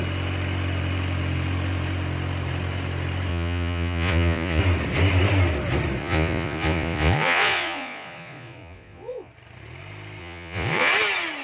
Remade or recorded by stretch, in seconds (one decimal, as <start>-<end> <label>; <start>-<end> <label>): 0.0-3.3 recorded; 3.3-4.6 remade; 4.6-6.0 recorded; 6.0-9.3 remade; 9.3-10.2 recorded; 10.2-10.9 remade; 10.9-11.4 recorded